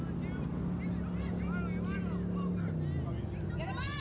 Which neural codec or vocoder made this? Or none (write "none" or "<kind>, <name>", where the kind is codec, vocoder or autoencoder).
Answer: none